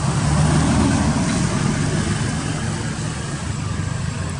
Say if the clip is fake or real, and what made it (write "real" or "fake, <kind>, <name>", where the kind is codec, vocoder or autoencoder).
real